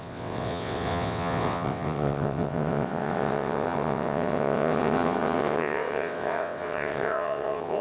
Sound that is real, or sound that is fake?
fake